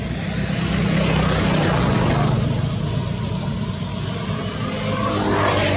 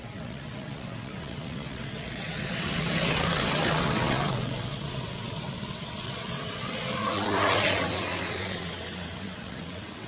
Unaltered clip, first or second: first